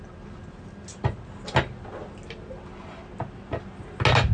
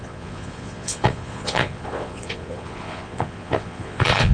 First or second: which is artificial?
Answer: second